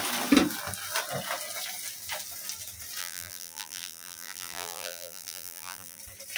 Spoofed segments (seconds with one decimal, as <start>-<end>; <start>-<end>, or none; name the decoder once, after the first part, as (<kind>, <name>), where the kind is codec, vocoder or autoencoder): 3.0-6.0 (vocoder, BigVGAN v2)